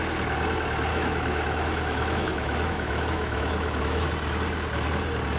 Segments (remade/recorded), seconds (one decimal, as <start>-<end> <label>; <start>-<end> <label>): 0.0-0.9 recorded; 0.9-4.1 remade; 4.1-5.4 recorded